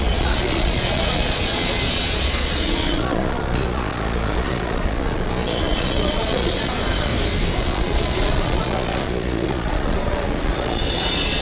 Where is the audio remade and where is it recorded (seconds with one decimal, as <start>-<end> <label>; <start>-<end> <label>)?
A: 0.0-7.1 remade; 7.1-7.6 recorded; 7.6-11.4 remade